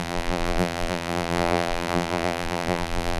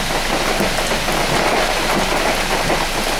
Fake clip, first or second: first